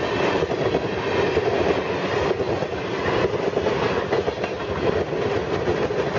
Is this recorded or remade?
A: recorded